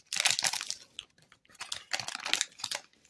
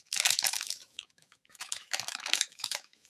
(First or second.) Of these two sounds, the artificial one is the second